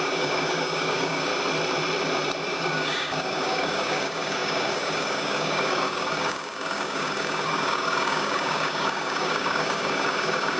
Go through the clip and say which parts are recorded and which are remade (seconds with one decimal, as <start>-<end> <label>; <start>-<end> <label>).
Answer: 0.0-1.3 remade; 1.3-2.6 recorded; 2.6-10.6 remade

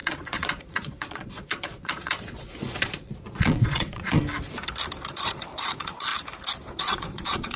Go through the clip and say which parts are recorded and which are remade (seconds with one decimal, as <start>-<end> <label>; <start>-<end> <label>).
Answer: 0.0-4.2 remade; 4.2-5.1 recorded; 5.1-6.1 remade; 6.1-6.7 recorded; 6.7-7.6 remade

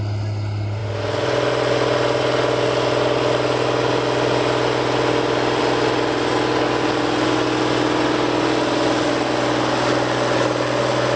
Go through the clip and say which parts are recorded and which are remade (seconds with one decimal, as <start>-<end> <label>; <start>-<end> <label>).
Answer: 0.0-11.2 recorded

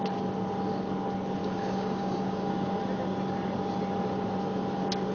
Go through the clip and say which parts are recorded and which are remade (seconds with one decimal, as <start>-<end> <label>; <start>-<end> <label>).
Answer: 0.0-1.4 recorded; 1.4-2.8 remade; 2.8-5.1 recorded

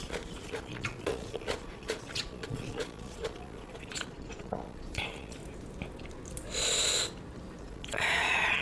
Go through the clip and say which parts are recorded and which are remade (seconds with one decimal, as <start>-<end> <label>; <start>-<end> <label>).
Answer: 0.0-5.4 remade; 5.4-7.6 recorded; 7.6-8.6 remade

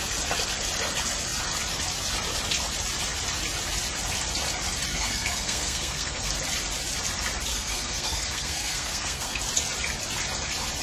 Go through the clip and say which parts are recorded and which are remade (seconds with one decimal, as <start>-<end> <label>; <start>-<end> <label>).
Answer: 0.0-4.9 recorded; 4.9-6.3 remade; 6.3-7.5 recorded; 7.5-9.4 remade; 9.4-10.8 recorded

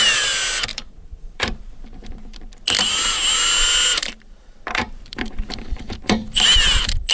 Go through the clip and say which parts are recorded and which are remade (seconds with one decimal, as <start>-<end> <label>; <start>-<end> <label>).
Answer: 0.0-0.7 recorded; 0.7-2.5 remade; 2.5-4.0 recorded; 4.0-7.1 remade

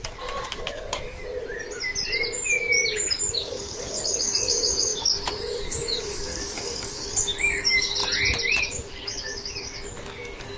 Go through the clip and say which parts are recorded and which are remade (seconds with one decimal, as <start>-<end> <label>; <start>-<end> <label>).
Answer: 0.0-1.2 remade; 1.2-3.3 recorded; 3.3-8.0 remade; 8.0-8.6 recorded; 8.6-10.6 remade